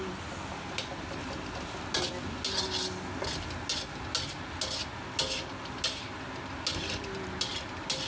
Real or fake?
real